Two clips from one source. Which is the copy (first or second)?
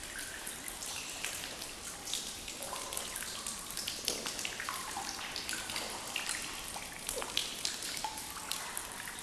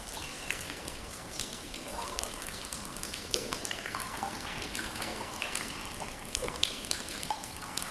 second